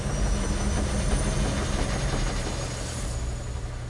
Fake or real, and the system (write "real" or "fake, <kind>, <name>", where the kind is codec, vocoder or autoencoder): real